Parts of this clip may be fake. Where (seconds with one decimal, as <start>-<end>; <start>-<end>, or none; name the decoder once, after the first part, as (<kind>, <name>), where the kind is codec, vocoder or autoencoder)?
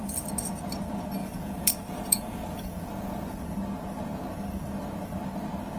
1.2-3.4 (vocoder, Vocos)